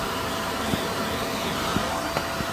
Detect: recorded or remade recorded